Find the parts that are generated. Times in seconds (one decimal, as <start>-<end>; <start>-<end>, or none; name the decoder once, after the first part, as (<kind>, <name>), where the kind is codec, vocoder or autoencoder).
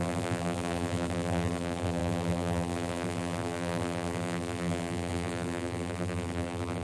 0.0-6.8 (vocoder, BigVGAN v2)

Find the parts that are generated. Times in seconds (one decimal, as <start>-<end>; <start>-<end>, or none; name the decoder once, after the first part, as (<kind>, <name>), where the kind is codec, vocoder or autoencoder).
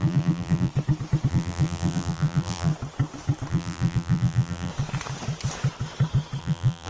0.0-0.7 (vocoder, BigVGAN v2); 1.3-2.7; 3.5-4.7; 6.4-6.9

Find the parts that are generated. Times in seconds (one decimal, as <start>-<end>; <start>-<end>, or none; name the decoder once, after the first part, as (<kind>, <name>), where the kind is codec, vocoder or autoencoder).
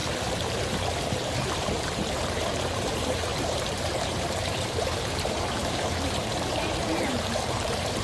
0.0-8.0 (vocoder, BigVGAN v2)